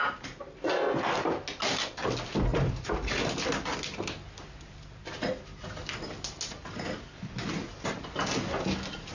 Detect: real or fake real